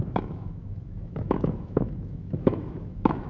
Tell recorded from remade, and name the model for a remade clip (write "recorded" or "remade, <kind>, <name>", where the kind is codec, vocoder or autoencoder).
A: remade, autoencoder, DAC-VAE